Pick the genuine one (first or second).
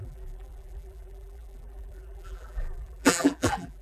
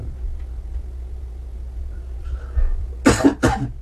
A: second